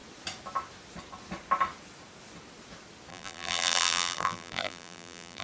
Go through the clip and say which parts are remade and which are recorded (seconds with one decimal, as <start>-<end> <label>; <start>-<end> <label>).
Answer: 0.0-3.1 recorded; 3.1-5.4 remade